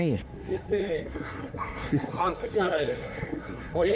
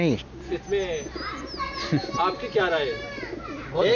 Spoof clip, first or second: first